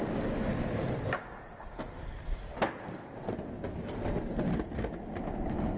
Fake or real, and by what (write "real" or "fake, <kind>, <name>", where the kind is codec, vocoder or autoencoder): real